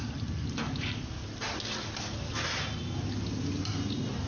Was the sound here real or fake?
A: real